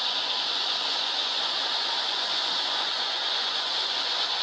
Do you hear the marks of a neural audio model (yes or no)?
yes